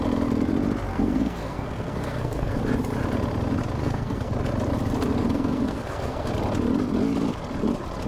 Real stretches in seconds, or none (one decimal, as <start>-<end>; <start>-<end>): 0.0-0.9; 2.6-3.8; 4.3-5.2; 6.3-8.1